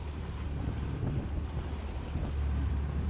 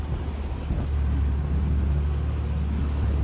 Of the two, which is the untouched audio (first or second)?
second